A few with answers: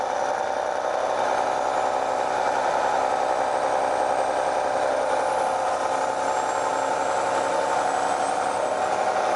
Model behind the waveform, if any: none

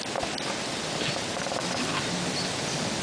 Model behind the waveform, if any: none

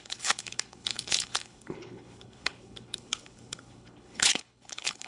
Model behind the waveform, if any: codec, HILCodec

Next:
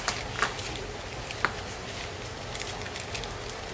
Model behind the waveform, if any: none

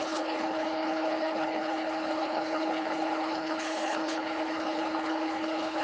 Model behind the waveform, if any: codec, HILCodec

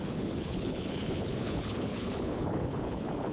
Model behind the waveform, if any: codec, HILCodec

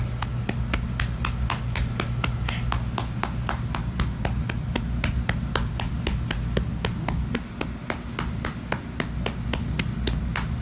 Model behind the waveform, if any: none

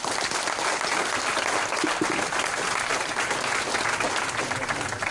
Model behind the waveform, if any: none